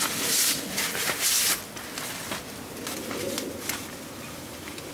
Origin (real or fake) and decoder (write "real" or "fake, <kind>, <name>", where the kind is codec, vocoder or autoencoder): real